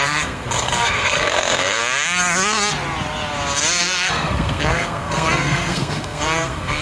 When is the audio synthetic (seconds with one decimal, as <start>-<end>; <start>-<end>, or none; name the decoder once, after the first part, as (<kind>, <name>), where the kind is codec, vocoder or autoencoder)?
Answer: 0.0-1.8 (codec, SNAC); 3.8-6.8